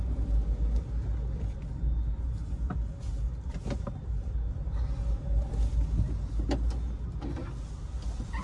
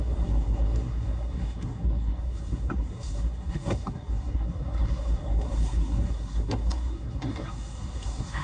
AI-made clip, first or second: second